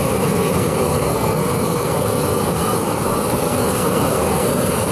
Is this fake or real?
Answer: fake